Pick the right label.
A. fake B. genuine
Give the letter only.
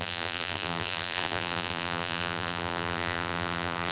A